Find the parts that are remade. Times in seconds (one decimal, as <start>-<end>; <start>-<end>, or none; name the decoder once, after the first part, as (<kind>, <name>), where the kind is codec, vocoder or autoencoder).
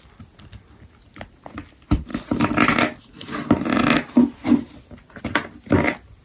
none